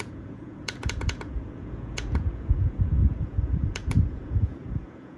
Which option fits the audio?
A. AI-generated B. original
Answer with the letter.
A